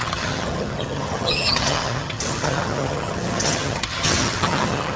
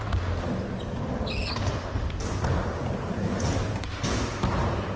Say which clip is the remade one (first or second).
first